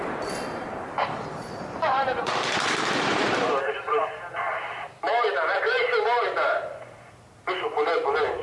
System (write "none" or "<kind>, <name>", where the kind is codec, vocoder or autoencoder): vocoder, BigVGAN v2